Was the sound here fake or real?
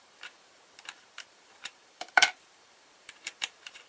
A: fake